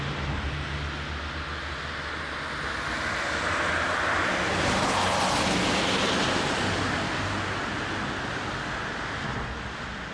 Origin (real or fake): real